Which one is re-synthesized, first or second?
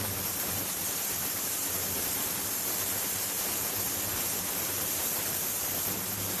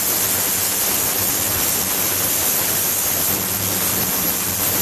first